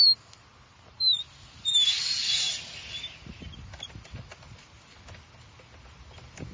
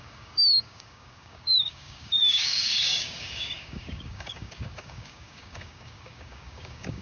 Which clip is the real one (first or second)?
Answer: first